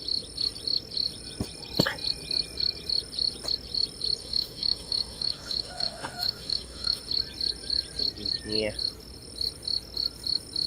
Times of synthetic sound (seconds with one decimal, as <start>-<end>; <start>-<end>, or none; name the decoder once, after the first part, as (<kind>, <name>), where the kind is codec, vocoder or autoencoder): 4.2-7.0 (autoencoder, DAC-VAE)